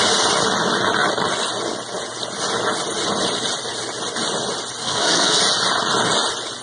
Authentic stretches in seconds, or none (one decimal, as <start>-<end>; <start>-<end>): 0.0-4.8; 5.4-6.6